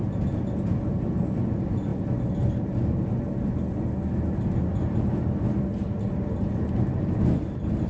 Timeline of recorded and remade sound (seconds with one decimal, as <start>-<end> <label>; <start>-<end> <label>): 0.0-7.9 recorded